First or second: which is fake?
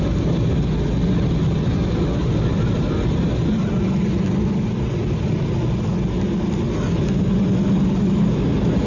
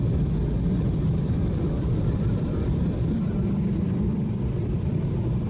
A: second